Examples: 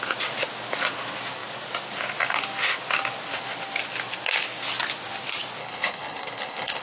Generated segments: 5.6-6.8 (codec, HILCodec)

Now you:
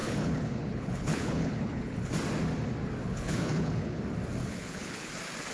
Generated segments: 0.0-2.1 (codec, HILCodec); 3.0-4.0; 4.4-5.1

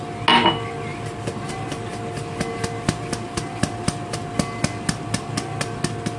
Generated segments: none

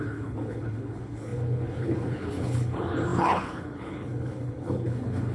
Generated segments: 0.0-5.3 (codec, HILCodec)

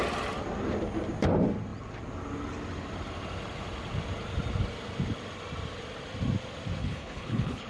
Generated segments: 6.8-7.7 (codec, HILCodec)

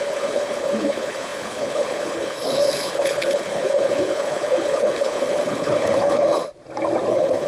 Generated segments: 0.0-6.4 (codec, HILCodec); 7.1-7.5

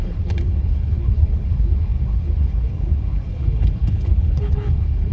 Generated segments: 0.0-5.1 (codec, HILCodec)

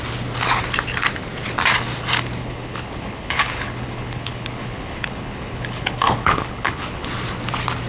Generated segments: 2.4-7.1 (codec, HILCodec)